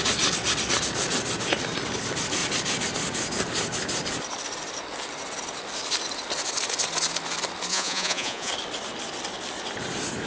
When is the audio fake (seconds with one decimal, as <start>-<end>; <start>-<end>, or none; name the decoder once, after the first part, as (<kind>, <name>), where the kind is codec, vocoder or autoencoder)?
7.7-8.5 (vocoder, Vocos)